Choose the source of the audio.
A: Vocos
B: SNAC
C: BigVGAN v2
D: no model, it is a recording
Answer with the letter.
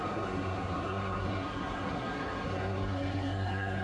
B